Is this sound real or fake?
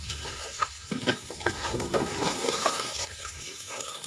fake